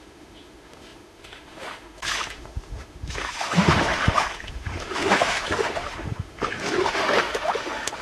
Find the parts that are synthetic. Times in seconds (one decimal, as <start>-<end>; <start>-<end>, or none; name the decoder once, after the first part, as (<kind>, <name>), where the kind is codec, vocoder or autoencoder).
0.0-8.0 (autoencoder, DAC-VAE)